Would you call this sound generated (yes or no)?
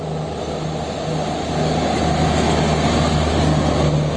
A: no